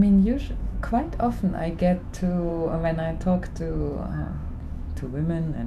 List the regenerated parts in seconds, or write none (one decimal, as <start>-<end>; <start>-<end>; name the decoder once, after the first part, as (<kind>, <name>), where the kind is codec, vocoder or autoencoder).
0.0-2.5 (autoencoder, DAC-VAE); 3.5-5.7